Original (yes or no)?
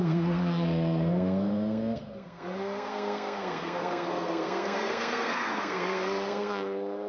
no